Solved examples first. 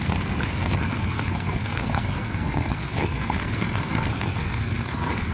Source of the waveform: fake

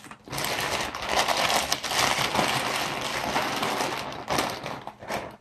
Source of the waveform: real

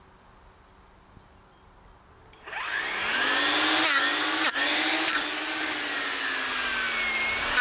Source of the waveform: real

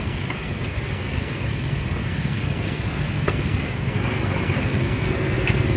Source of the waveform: fake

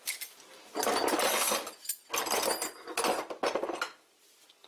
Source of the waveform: real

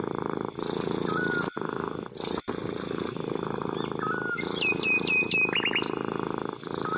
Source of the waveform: real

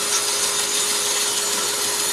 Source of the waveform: real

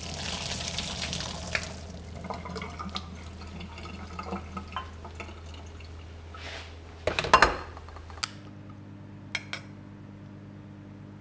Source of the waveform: real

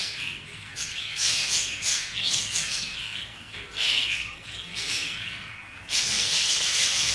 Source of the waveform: fake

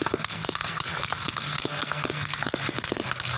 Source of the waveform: fake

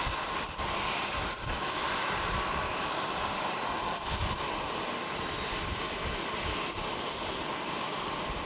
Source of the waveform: real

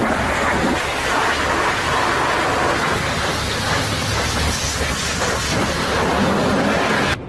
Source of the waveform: real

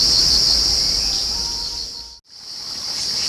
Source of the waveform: real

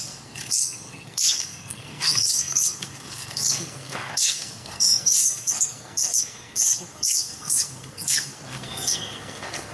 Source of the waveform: fake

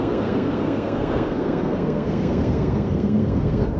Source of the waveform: fake